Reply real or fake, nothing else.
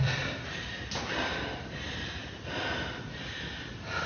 real